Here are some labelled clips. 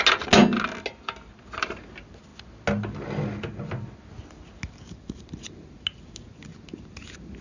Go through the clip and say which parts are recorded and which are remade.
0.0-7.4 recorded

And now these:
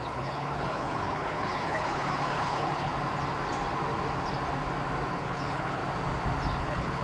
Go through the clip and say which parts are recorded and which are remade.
0.0-2.9 remade; 2.9-5.1 recorded; 5.1-5.8 remade; 5.8-6.6 recorded; 6.6-7.0 remade

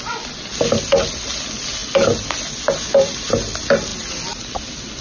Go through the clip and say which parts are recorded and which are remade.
0.0-1.8 remade; 1.8-2.4 recorded; 2.4-5.0 remade

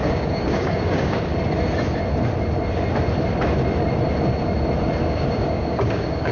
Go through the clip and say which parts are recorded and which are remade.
0.0-1.3 remade; 1.3-5.1 recorded; 5.1-6.3 remade

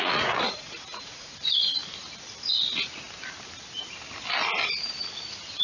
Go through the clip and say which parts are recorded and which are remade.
0.0-1.8 remade; 1.8-5.6 recorded